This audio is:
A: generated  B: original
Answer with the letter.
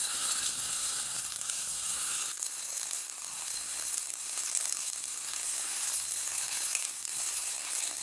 A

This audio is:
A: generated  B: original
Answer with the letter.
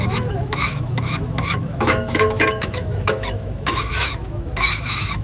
A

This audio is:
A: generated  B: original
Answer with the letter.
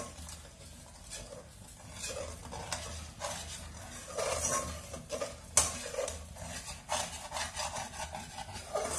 B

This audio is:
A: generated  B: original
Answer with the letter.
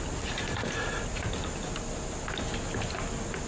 B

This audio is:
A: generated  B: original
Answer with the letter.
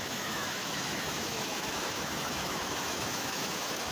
A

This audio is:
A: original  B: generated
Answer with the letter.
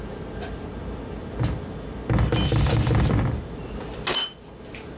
A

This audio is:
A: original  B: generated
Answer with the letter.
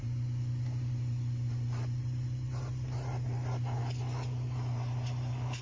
A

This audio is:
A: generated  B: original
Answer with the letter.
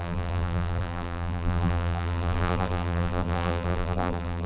A